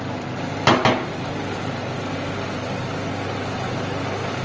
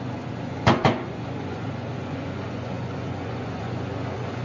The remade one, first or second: second